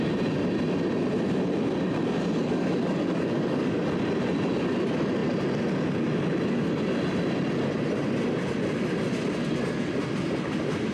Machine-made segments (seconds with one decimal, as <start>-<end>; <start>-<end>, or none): 2.4-3.8